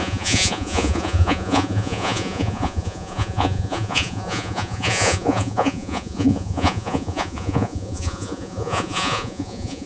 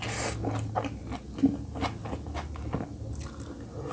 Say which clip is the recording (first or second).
second